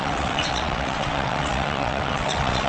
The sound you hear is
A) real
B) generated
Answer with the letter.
B